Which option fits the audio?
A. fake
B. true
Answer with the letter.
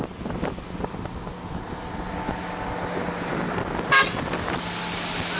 B